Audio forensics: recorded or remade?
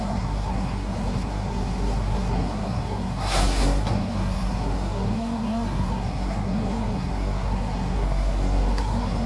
remade